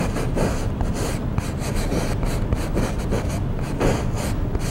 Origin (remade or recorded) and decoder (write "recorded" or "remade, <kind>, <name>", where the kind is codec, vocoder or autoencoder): recorded